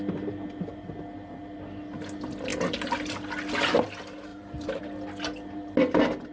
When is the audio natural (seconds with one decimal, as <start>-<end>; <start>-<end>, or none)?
0.0-4.3; 4.8-6.3